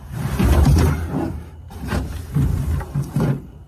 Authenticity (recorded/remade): remade